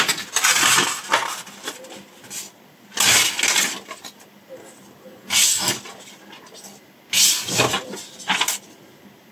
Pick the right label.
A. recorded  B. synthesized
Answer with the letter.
A